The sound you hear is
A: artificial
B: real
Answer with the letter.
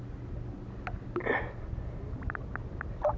B